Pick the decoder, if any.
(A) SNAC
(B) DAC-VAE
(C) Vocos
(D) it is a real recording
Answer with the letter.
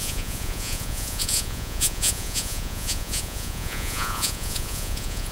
C